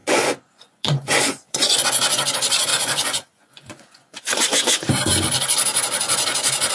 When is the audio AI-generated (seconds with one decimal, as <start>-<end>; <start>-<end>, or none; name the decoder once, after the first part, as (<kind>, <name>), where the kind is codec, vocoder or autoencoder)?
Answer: 0.0-1.8 (vocoder, Vocos); 2.7-4.9